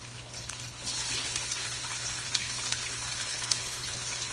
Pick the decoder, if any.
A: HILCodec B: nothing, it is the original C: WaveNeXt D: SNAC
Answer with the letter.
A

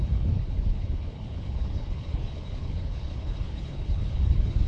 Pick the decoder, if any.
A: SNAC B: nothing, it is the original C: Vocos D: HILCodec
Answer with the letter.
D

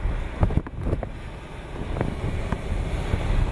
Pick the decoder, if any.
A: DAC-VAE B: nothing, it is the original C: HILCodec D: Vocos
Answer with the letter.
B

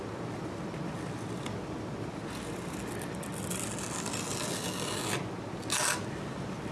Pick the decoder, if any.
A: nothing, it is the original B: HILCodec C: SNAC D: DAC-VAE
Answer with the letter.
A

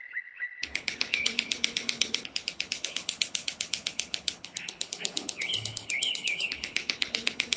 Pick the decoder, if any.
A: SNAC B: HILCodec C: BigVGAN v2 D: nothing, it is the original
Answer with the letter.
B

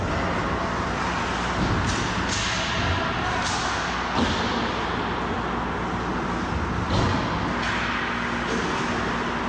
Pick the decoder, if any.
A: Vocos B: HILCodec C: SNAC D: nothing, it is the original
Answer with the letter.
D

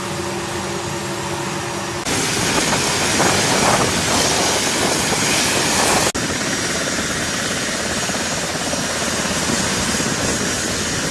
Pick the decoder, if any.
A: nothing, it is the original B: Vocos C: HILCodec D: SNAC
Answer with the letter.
A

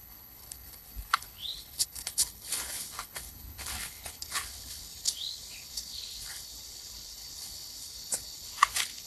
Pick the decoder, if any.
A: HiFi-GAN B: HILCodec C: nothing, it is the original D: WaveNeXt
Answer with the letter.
B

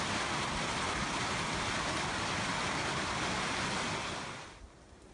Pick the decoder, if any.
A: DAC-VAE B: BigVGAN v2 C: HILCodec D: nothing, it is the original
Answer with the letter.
D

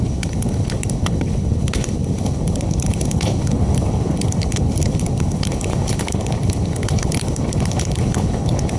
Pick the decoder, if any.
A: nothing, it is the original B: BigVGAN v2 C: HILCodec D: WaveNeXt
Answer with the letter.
C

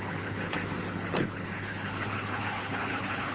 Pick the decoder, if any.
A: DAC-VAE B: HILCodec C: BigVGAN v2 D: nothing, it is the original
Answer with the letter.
B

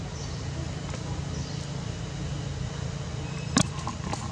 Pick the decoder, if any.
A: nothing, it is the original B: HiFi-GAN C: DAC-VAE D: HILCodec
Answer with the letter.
A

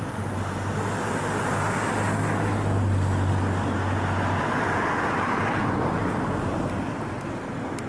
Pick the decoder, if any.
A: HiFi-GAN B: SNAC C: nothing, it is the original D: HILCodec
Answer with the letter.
C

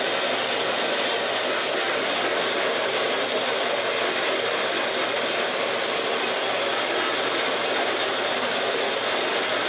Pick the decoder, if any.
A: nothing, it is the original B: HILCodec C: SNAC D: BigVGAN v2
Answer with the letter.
A